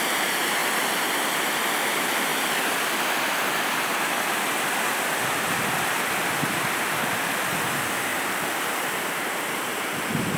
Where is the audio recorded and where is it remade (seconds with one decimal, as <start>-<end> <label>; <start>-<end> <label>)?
0.0-2.3 recorded; 2.3-7.3 remade; 7.3-10.4 recorded